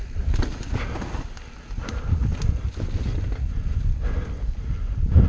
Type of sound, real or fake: real